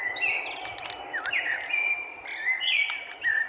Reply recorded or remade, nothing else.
recorded